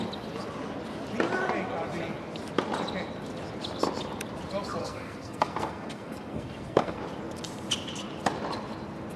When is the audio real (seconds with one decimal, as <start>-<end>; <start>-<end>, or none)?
0.0-4.8; 7.0-9.2